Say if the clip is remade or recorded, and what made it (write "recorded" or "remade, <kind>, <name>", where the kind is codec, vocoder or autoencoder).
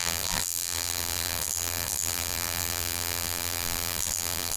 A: remade, vocoder, BigVGAN v2